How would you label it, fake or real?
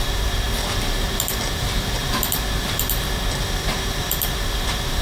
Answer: fake